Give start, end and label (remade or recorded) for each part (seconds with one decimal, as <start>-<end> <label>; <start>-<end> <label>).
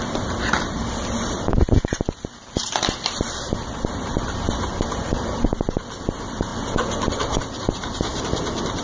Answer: 0.0-6.5 remade; 6.5-7.1 recorded; 7.1-8.1 remade; 8.1-8.8 recorded